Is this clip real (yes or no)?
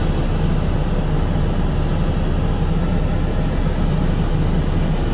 yes